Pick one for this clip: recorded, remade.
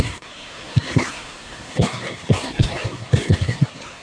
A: remade